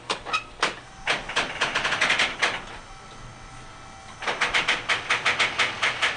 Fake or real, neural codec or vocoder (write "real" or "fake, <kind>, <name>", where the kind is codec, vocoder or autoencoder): real